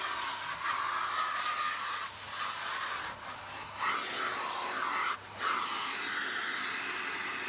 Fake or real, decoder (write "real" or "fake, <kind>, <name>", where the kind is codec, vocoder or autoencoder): real